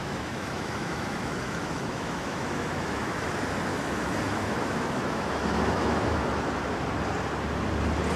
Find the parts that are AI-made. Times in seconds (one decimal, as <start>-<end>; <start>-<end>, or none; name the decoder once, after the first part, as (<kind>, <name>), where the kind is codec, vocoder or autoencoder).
0.0-3.3 (autoencoder, DAC-VAE); 3.7-6.2